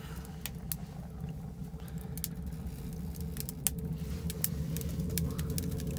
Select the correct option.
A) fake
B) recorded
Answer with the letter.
B